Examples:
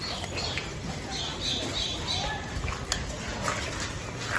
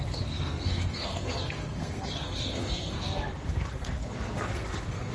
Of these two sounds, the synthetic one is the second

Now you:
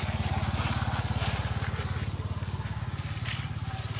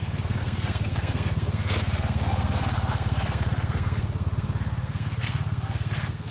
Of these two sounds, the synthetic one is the second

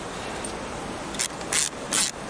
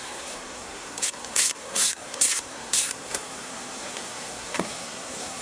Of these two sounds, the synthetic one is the second